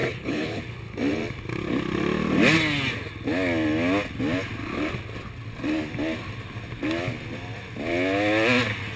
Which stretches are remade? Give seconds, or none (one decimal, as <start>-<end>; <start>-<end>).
0.0-0.6